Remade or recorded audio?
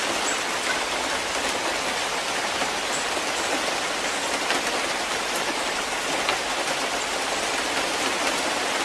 recorded